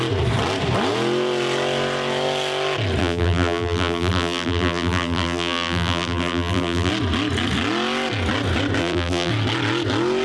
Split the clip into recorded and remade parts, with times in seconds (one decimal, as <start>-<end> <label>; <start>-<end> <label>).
0.0-3.0 recorded; 3.0-6.9 remade; 6.9-8.8 recorded; 8.8-9.3 remade; 9.3-10.2 recorded